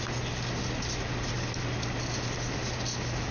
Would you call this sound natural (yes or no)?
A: yes